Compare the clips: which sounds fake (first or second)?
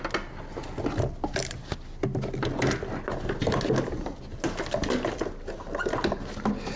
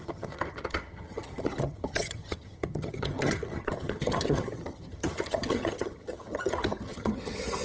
second